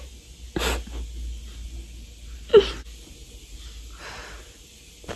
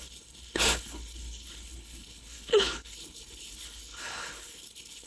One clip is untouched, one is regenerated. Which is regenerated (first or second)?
second